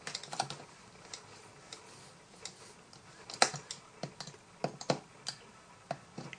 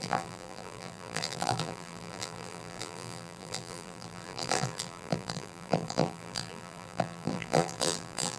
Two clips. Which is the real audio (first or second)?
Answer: first